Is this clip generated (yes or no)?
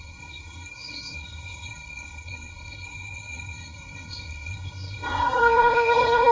yes